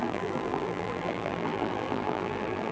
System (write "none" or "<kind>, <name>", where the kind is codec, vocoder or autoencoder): vocoder, BigVGAN v2